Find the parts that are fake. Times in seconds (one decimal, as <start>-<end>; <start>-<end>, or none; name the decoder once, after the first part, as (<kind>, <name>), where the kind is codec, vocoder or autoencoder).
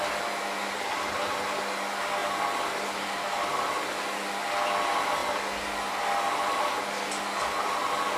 none